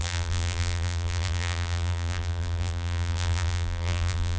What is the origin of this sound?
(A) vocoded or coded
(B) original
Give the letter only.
A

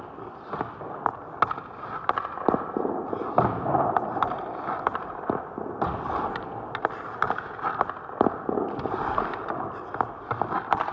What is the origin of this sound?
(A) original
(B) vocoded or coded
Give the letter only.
A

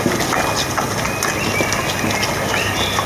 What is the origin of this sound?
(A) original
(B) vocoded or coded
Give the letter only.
A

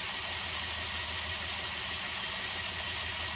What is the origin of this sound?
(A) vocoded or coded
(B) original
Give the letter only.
B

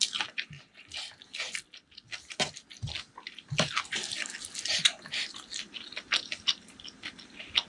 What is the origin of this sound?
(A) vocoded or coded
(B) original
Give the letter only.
B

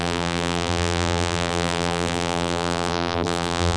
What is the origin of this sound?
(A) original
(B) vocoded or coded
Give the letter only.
B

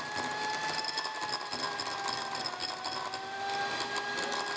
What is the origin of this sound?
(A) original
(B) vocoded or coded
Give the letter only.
A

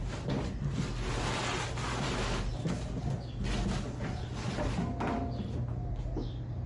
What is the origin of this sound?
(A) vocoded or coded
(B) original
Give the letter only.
B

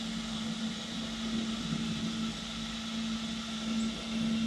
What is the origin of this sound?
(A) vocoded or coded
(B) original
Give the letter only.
B